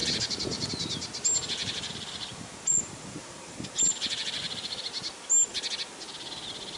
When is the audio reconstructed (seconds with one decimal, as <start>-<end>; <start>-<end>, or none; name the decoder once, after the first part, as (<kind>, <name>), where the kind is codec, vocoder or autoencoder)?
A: 0.0-0.7 (vocoder, BigVGAN v2); 1.6-4.8